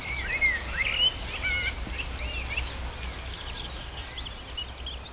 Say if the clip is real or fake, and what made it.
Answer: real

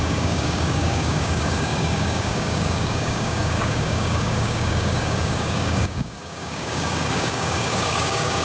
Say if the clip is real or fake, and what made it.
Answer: fake, codec, DAC